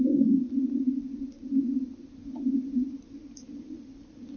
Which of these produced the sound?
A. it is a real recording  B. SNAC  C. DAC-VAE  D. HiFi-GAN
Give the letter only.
A